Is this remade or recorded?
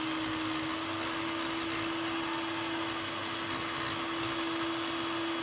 recorded